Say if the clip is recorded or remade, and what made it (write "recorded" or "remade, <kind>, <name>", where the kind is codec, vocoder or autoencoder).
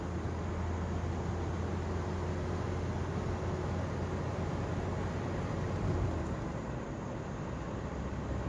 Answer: recorded